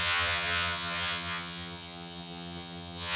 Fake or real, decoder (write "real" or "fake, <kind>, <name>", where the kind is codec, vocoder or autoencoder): fake, vocoder, HiFi-GAN